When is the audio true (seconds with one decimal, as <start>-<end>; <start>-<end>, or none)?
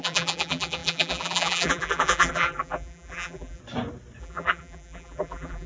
3.6-4.2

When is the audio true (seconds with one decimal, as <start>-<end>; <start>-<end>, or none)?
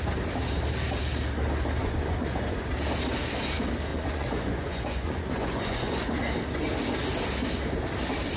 0.0-1.8; 2.7-3.9; 6.2-8.4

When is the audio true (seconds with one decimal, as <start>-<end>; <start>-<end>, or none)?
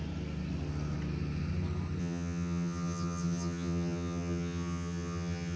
0.0-2.0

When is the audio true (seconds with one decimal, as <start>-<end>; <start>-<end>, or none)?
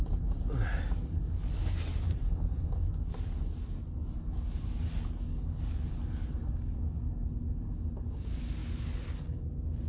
0.0-1.6; 2.9-9.9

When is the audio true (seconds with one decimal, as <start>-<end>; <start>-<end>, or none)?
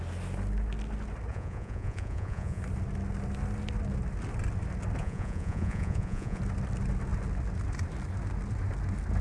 0.0-1.3; 2.6-5.0; 6.4-9.2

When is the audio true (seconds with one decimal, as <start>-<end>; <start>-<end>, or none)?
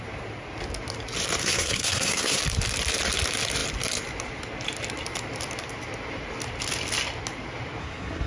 0.0-1.4; 2.4-7.8